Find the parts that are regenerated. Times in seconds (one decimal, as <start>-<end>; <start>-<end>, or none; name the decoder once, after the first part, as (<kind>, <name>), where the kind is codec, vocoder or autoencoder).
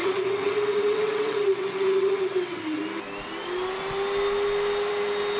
0.0-2.8 (vocoder, WaveNeXt)